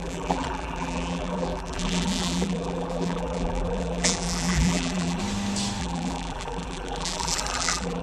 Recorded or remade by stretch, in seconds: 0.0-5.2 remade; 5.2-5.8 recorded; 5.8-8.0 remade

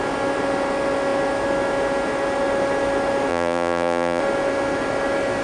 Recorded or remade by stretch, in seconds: 0.0-3.3 recorded; 3.3-4.2 remade; 4.2-5.4 recorded

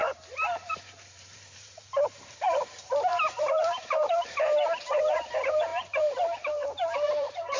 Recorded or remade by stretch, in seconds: 0.0-7.6 remade

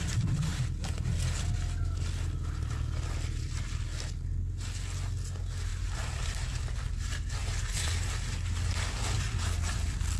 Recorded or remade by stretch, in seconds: 0.0-5.7 recorded; 5.7-6.6 remade; 6.6-7.4 recorded; 7.4-8.7 remade; 8.7-10.2 recorded

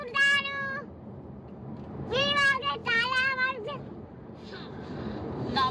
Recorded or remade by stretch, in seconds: 0.0-5.7 remade

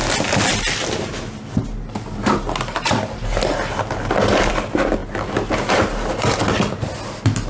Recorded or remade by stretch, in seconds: 0.0-7.5 recorded

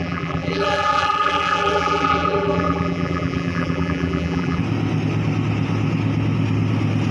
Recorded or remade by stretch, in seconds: 0.0-4.6 remade; 4.6-7.1 recorded

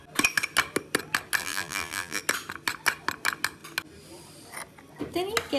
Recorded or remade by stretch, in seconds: 0.0-1.4 recorded; 1.4-2.2 remade; 2.2-5.6 recorded